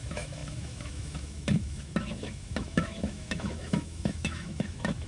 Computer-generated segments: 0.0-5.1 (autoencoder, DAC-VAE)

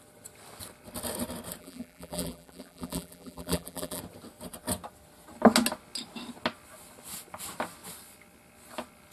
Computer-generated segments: 1.6-4.0 (vocoder, BigVGAN v2)

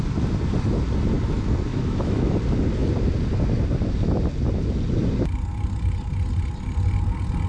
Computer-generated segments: 1.7-2.3 (autoencoder, DAC-VAE)

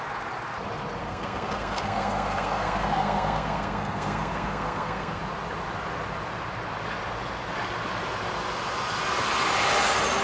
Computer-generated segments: 1.0-5.2 (codec, SNAC)